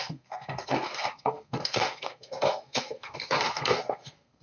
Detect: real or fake fake